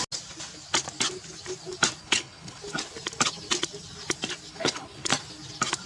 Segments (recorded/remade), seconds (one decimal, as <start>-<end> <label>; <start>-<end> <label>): 0.0-2.0 recorded; 2.0-2.6 remade; 2.6-4.5 recorded; 4.5-5.1 remade; 5.1-5.9 recorded